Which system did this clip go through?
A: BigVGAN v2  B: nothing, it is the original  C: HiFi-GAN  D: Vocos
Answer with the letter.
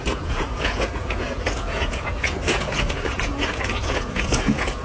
D